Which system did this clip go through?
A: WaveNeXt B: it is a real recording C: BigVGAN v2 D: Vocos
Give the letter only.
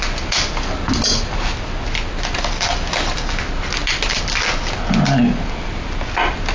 B